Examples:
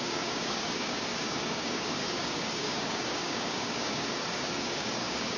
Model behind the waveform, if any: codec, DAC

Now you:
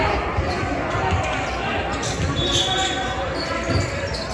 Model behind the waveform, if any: none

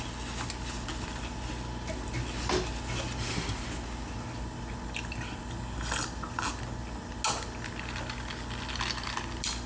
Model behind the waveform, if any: none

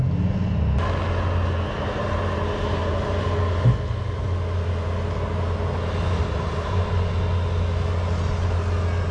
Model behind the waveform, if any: none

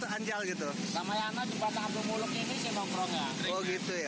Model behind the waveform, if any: none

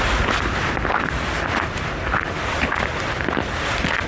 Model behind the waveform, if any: none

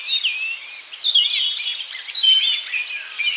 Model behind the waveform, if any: none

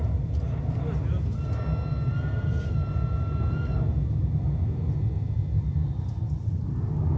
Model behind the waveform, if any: none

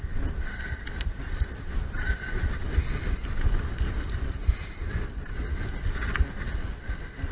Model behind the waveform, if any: none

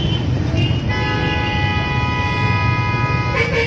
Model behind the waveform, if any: none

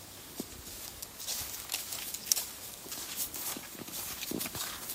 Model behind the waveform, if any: codec, DAC